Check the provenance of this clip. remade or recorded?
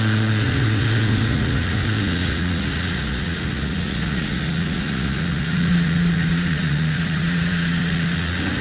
remade